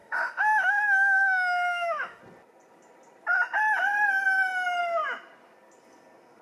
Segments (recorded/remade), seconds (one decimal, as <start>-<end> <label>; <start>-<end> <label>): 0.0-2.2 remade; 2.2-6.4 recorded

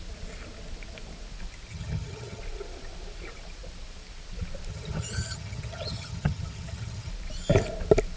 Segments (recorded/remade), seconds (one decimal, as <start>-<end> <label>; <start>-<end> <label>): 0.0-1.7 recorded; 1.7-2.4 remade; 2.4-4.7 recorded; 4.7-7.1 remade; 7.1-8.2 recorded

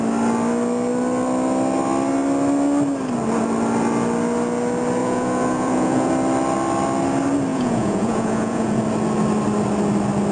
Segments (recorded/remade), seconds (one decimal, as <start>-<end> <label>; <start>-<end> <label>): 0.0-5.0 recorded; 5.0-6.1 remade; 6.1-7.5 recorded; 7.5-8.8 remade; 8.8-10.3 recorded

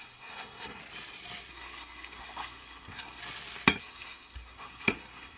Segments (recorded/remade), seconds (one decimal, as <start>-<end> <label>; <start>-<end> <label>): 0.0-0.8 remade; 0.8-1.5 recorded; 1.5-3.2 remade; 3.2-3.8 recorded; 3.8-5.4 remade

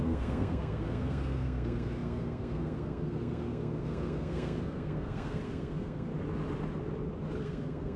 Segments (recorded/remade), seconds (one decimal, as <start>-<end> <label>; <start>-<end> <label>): 0.0-6.1 remade; 6.1-7.4 recorded; 7.4-8.0 remade